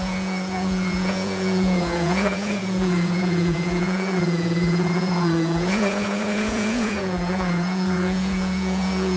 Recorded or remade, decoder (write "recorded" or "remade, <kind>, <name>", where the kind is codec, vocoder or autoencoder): remade, vocoder, Vocos